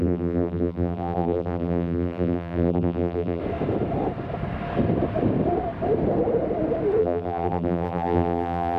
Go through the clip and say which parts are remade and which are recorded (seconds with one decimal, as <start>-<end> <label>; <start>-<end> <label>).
0.0-3.4 remade; 3.4-7.0 recorded; 7.0-8.8 remade